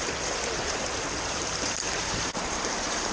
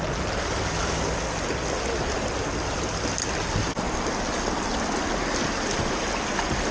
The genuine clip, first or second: second